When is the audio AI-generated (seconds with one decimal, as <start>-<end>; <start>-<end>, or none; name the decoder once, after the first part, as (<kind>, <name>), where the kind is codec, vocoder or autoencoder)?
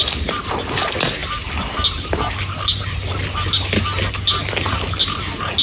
none